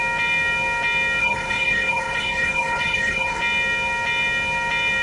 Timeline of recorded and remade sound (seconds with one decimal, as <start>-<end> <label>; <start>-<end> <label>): 0.0-1.2 recorded; 1.2-3.4 remade; 3.4-5.0 recorded